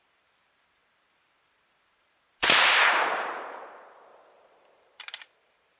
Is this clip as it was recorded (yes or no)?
no